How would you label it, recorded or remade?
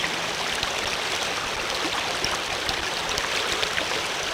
recorded